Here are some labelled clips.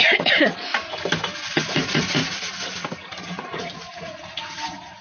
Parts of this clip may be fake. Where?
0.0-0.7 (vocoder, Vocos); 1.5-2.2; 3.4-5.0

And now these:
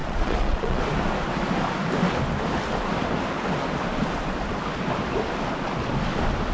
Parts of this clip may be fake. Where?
0.0-0.8 (vocoder, Vocos)

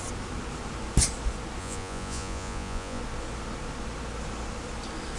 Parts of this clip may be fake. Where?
1.6-3.0 (vocoder, Vocos)

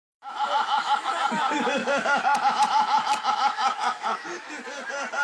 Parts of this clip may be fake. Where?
0.0-1.1 (autoencoder, DAC-VAE); 1.8-4.5

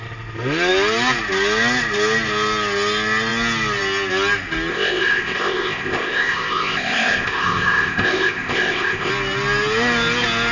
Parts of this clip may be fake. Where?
4.7-9.1 (codec, ZipCodec)